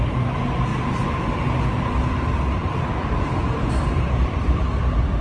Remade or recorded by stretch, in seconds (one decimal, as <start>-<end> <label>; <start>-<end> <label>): 0.0-0.7 recorded; 0.7-1.6 remade; 1.6-2.6 recorded; 2.6-4.6 remade; 4.6-5.2 recorded